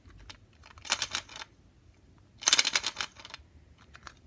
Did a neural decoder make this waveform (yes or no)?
no